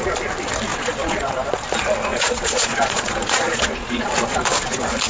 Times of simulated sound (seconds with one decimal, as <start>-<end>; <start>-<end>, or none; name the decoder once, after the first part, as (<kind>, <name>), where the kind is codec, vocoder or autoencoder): 0.7-1.3 (vocoder, Vocos); 2.1-4.1